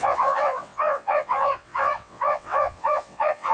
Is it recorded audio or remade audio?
remade